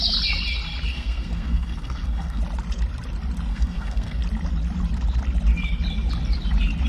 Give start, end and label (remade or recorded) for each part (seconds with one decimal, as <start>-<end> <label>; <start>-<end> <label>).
0.0-0.9 recorded; 0.9-2.4 remade; 2.4-3.5 recorded; 3.5-4.2 remade; 4.2-6.9 recorded